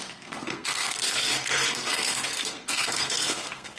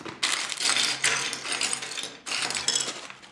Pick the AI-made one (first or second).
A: first